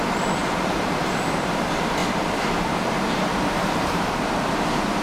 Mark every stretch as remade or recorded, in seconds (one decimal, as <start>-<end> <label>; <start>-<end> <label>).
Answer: 0.0-0.4 recorded; 0.4-1.5 remade; 1.5-2.0 recorded; 2.0-5.0 remade